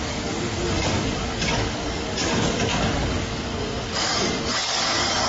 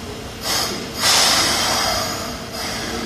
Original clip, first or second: second